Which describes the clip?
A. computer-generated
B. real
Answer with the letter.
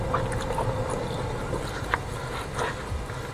A